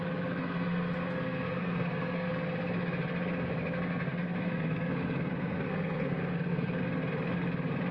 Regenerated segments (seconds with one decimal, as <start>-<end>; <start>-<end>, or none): 0.4-2.3; 4.1-6.8